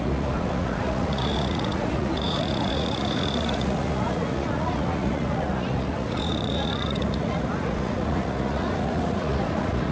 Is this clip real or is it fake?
fake